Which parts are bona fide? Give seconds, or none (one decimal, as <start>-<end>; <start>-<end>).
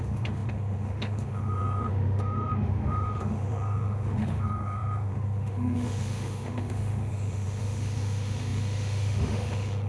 none